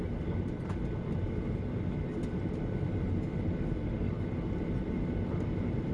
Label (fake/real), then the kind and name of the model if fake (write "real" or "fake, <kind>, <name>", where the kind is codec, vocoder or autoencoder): real